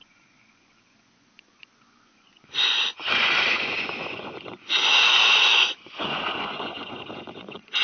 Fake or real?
fake